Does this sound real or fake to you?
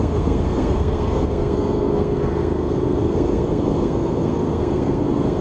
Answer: fake